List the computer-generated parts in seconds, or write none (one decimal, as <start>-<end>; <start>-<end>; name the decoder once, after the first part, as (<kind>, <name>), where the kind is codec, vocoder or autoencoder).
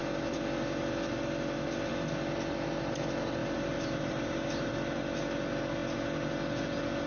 3.4-4.7 (vocoder, BigVGAN v2)